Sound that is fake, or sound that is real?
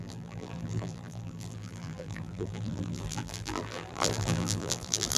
fake